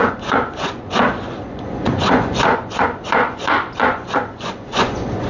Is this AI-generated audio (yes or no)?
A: yes